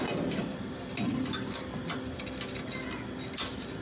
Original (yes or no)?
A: yes